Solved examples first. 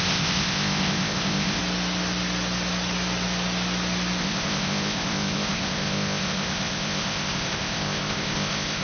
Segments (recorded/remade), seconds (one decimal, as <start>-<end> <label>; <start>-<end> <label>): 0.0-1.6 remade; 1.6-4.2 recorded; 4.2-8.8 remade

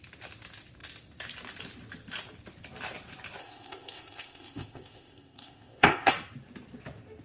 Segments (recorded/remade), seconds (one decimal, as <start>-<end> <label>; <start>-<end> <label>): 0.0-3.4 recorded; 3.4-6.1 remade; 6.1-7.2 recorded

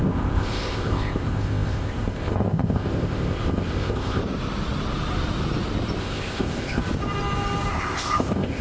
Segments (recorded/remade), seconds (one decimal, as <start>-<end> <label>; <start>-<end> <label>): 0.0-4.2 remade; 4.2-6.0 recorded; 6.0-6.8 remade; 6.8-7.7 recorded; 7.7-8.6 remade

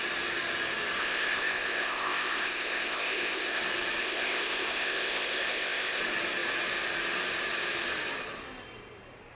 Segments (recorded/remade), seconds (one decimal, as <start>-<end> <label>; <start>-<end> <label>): 0.0-1.0 recorded; 1.0-3.6 remade; 3.6-4.0 recorded; 4.0-6.0 remade; 6.0-9.3 recorded

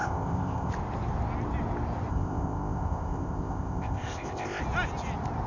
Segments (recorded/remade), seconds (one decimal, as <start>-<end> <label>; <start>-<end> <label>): 0.0-0.7 remade; 0.7-2.1 recorded; 2.1-4.6 remade; 4.6-5.5 recorded

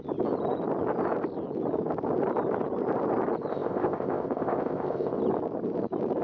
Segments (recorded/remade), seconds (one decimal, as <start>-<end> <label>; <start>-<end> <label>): 0.0-3.5 recorded; 3.5-5.2 remade; 5.2-6.2 recorded

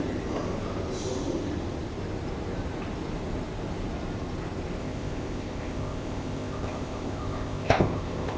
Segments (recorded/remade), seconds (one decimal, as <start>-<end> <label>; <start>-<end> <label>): 0.0-4.8 recorded; 4.8-8.4 remade

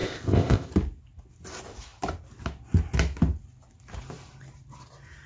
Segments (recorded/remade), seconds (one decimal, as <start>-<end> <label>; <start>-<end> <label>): 0.0-0.7 remade; 0.7-5.3 recorded